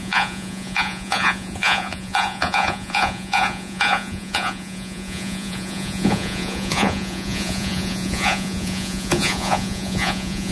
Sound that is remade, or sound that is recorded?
remade